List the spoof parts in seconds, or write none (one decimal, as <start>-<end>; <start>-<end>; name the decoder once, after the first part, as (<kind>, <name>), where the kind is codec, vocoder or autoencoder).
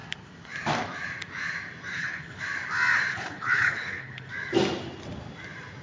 1.9-2.4 (codec, HILCodec); 3.1-4.3